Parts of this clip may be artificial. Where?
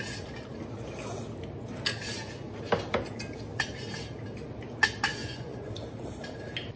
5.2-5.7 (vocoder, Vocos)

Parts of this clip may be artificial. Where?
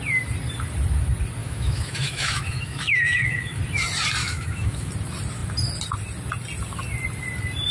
1.4-3.6 (autoencoder, DAC-VAE); 4.2-4.9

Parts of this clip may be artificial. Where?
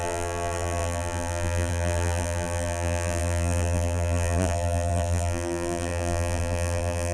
0.0-7.1 (vocoder, BigVGAN v2)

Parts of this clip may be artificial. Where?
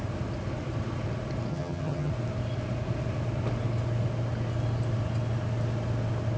1.5-2.1 (vocoder, HiFi-GAN)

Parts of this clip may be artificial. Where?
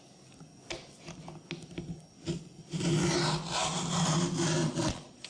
4.6-5.3 (vocoder, Vocos)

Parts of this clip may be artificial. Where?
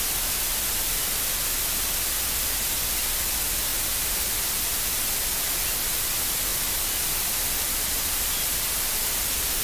3.7-4.9 (vocoder, BigVGAN v2); 6.5-9.6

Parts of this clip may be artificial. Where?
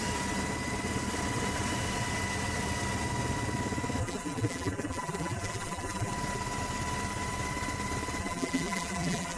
4.0-6.1 (vocoder, BigVGAN v2); 8.2-9.4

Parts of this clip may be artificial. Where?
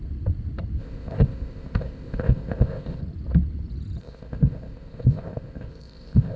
0.8-3.0 (codec, ZipCodec); 4.0-6.4